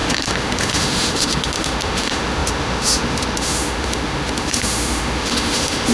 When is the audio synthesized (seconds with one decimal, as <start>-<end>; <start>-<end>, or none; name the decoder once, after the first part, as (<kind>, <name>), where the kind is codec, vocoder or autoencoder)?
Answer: 0.0-5.9 (autoencoder, DAC-VAE)